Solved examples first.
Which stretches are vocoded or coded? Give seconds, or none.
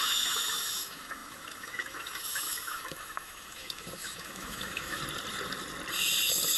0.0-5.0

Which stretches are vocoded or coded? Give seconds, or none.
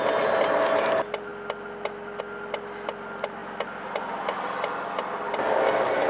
none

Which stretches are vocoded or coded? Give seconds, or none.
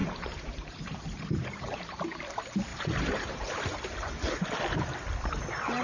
0.0-2.0; 2.7-4.6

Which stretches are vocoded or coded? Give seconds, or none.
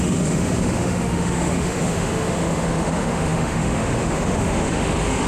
0.0-5.3